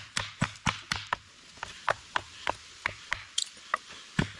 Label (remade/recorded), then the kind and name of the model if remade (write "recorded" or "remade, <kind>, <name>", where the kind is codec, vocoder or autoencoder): recorded